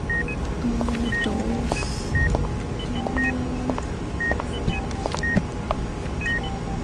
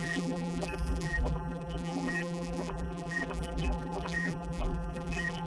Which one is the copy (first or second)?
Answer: second